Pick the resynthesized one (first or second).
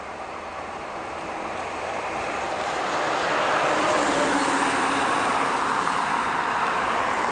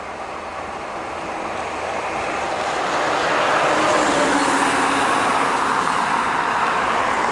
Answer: first